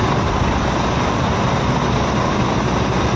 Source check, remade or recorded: recorded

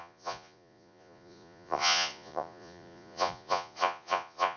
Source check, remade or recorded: remade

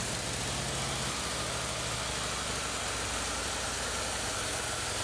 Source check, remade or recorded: recorded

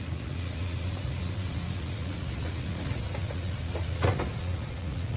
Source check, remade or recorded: remade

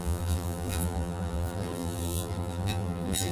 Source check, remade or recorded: remade